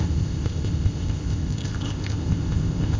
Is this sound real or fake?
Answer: fake